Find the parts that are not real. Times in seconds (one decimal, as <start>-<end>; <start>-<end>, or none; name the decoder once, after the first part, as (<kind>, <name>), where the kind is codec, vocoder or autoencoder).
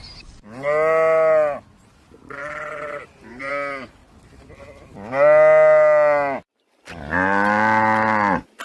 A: none